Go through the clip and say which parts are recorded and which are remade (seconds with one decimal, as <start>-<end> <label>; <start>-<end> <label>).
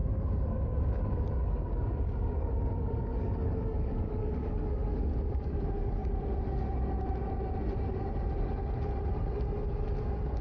0.0-6.0 remade; 6.0-10.4 recorded